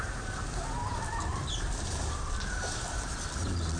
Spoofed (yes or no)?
no